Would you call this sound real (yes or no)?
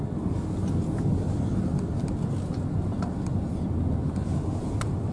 yes